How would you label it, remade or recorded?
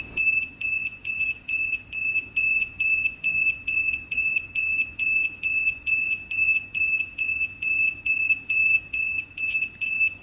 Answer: remade